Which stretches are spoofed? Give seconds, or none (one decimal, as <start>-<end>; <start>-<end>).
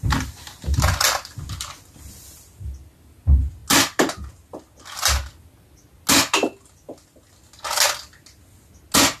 none